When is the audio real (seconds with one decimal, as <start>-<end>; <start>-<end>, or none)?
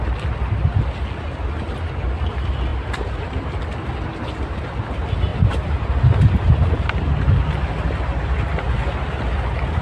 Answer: 0.0-2.7; 3.6-4.1; 4.6-5.3; 7.1-9.8